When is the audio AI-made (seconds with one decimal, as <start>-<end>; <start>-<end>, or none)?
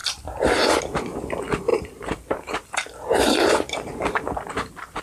0.0-0.8; 1.7-5.0